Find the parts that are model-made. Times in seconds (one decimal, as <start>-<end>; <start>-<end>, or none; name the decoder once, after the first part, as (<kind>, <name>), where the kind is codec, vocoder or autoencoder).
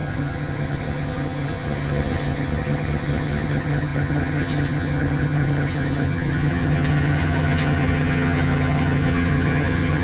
0.0-10.0 (vocoder, HiFi-GAN)